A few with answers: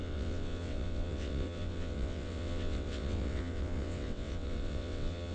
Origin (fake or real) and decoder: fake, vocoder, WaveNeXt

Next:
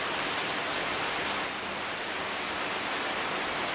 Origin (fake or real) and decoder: real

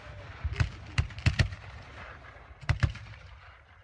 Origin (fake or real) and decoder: real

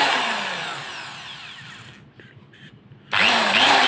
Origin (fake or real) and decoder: real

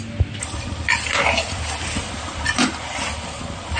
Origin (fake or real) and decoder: real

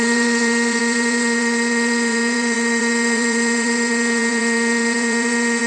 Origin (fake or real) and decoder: fake, vocoder, WaveNeXt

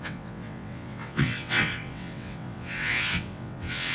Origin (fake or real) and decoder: fake, vocoder, WaveNeXt